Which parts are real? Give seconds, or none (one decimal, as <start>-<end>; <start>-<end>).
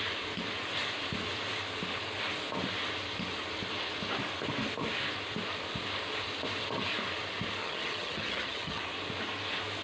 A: 0.0-7.6; 8.8-9.8